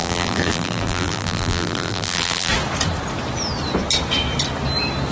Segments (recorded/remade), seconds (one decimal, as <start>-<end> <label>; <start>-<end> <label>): 0.0-2.5 remade; 2.5-5.1 recorded